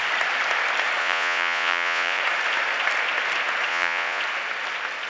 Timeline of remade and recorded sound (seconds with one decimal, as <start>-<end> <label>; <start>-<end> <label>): 0.0-1.0 recorded; 1.0-2.2 remade; 2.2-3.7 recorded; 3.7-4.2 remade; 4.2-5.1 recorded